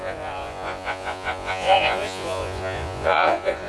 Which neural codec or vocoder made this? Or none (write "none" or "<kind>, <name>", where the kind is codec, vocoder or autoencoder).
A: vocoder, Vocos